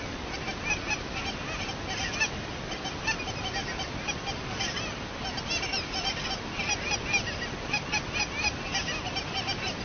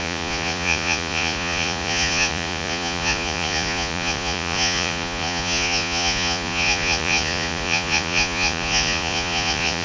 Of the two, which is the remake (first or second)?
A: second